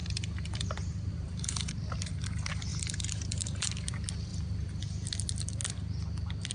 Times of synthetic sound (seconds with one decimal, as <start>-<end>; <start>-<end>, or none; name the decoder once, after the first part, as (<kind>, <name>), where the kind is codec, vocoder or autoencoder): 0.0-1.8 (vocoder, BigVGAN v2); 2.7-3.7